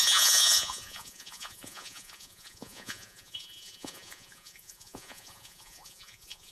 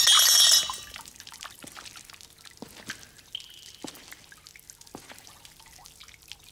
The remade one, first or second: first